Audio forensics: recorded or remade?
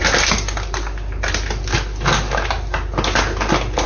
recorded